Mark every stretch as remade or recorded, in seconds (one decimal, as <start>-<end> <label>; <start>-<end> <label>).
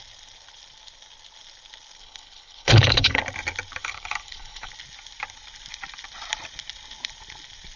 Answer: 0.0-2.0 recorded; 2.0-3.2 remade; 3.2-3.8 recorded; 3.8-4.7 remade; 4.7-7.8 recorded